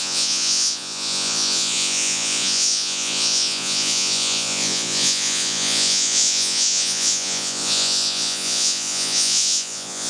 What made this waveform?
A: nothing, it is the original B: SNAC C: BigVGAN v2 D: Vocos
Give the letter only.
D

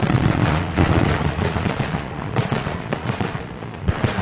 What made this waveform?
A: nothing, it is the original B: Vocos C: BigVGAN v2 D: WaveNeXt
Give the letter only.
B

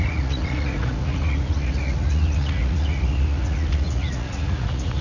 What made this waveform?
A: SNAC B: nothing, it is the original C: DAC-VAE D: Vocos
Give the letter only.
D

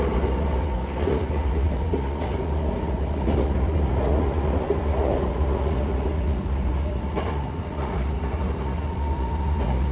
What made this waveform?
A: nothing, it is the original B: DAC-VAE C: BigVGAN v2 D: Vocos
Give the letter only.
D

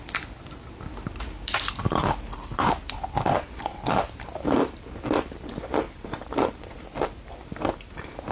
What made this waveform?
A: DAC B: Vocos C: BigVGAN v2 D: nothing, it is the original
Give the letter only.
D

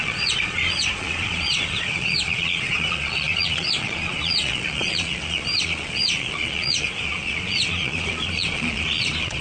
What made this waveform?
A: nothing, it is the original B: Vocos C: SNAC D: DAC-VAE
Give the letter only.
B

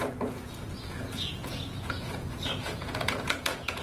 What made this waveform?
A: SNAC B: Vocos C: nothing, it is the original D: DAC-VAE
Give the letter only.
B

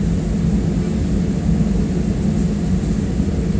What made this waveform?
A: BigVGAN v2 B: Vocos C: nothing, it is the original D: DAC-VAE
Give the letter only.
C